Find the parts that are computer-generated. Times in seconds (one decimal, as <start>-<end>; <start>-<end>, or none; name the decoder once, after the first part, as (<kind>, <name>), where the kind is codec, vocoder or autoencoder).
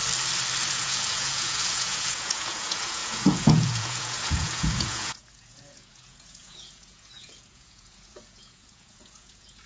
0.7-9.7 (vocoder, Vocos)